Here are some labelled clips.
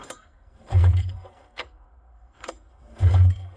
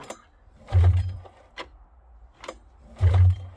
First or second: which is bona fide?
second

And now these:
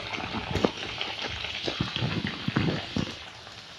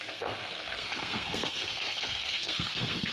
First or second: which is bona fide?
first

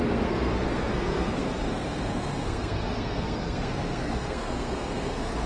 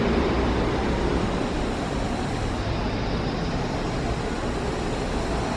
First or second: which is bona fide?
second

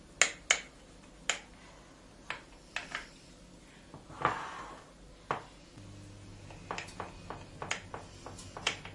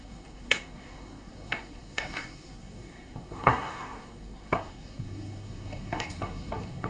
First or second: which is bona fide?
first